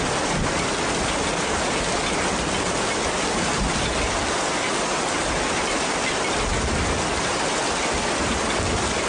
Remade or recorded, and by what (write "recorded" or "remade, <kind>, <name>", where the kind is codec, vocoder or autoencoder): recorded